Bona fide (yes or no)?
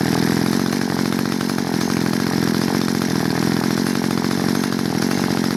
yes